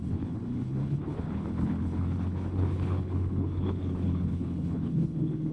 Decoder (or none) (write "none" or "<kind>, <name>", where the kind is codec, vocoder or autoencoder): codec, HILCodec